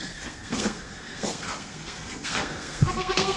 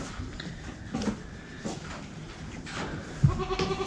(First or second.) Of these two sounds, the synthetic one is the first